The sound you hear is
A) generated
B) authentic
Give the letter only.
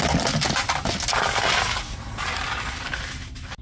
B